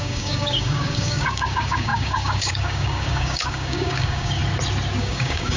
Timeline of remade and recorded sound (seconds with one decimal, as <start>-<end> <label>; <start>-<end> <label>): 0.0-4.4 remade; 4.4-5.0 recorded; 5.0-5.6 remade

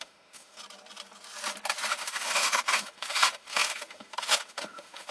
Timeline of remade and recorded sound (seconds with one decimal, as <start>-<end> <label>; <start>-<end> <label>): 0.0-0.6 remade; 0.6-1.9 recorded; 1.9-5.1 remade

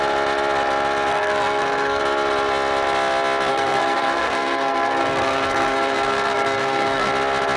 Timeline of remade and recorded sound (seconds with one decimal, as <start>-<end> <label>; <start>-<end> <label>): 0.0-1.1 recorded; 1.1-2.0 remade; 2.0-3.5 recorded; 3.5-7.1 remade; 7.1-7.6 recorded

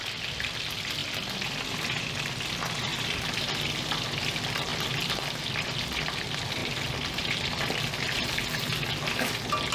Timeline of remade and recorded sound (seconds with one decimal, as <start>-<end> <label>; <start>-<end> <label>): 0.0-2.9 recorded; 2.9-4.1 remade; 4.1-4.7 recorded; 4.7-6.1 remade; 6.1-6.6 recorded; 6.6-8.4 remade; 8.4-9.7 recorded